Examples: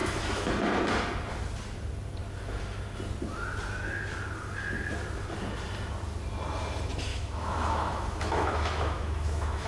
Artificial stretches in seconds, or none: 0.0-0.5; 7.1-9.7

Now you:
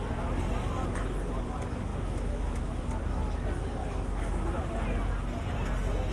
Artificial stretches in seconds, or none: 1.9-2.8; 3.8-4.6

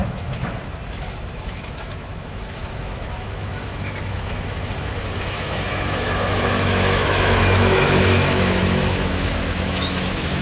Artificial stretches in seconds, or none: 0.0-10.4

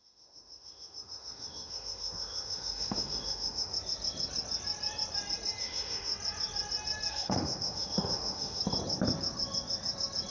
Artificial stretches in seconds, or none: 0.0-3.7; 5.6-6.1; 7.1-8.6

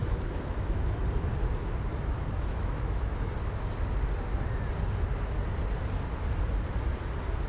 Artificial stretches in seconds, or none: 0.0-0.8; 1.9-3.3